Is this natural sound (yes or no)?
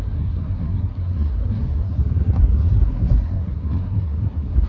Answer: no